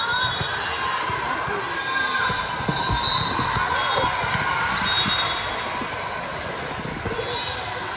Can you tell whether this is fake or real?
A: real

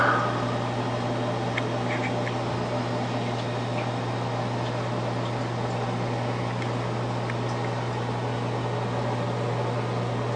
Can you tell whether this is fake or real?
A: real